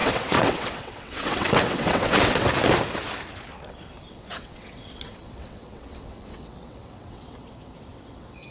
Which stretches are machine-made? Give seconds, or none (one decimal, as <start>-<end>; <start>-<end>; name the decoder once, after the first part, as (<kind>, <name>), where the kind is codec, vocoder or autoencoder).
0.0-2.5 (vocoder, WaveNeXt); 4.1-8.5

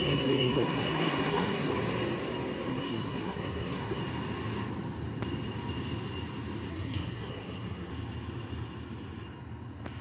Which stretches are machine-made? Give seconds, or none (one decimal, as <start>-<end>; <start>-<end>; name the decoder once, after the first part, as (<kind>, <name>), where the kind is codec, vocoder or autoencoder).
0.0-1.7 (codec, SNAC); 2.7-4.0; 6.7-7.9

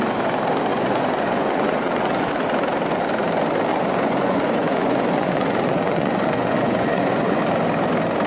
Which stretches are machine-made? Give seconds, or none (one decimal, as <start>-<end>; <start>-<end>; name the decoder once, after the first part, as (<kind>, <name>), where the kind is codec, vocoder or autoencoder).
0.7-2.3 (vocoder, Vocos); 3.7-7.4

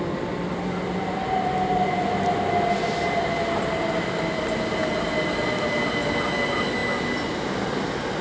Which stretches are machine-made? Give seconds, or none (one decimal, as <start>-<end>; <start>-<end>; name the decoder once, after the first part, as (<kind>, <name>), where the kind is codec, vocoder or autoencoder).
none

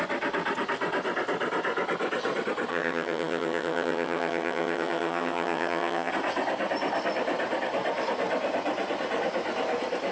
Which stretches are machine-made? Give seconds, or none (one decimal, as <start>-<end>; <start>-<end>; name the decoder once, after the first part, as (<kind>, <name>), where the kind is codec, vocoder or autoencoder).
2.7-6.1 (vocoder, HiFi-GAN)

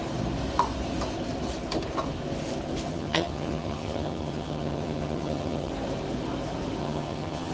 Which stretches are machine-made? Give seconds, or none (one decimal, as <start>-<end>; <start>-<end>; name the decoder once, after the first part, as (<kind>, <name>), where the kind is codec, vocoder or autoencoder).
2.9-5.7 (vocoder, HiFi-GAN); 6.8-7.5

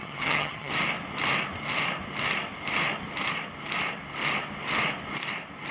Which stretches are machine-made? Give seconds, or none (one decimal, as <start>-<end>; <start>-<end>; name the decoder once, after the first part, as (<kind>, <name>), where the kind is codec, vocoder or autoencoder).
0.0-0.7 (vocoder, HiFi-GAN)

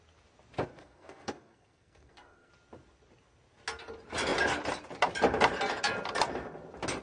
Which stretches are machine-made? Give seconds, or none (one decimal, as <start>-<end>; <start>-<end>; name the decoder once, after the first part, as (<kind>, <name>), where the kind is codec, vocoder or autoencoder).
0.7-2.5 (codec, SNAC)